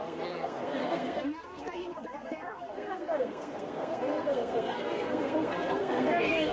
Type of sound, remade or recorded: remade